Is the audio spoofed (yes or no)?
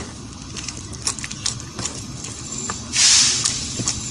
no